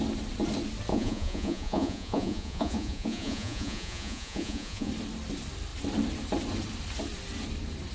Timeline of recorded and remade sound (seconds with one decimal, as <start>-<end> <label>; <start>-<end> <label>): 0.0-0.9 recorded; 0.9-4.9 remade; 4.9-7.9 recorded